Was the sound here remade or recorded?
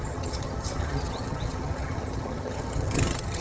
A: remade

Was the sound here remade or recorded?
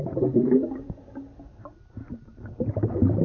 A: remade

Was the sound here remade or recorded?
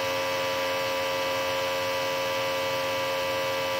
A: recorded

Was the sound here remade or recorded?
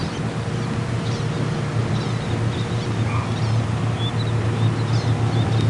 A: recorded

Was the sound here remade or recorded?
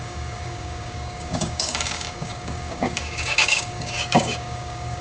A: remade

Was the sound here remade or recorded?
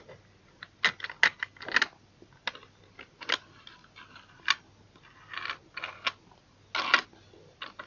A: recorded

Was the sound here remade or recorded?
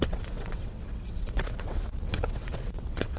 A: remade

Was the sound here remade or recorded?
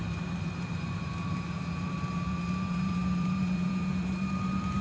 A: remade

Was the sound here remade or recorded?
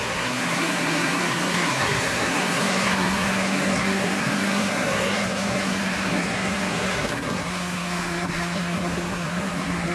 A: remade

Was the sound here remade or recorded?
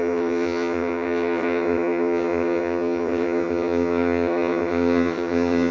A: remade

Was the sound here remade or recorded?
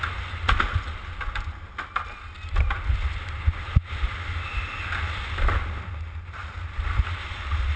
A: recorded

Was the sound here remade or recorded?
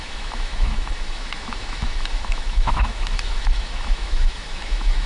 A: remade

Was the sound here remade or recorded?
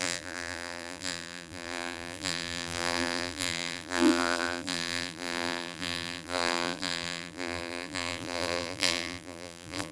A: remade